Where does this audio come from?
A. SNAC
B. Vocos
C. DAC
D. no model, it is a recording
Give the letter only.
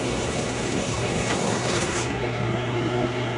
A